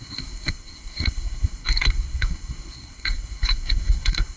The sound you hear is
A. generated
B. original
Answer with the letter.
A